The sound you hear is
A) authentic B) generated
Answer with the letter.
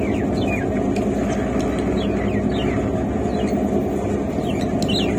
A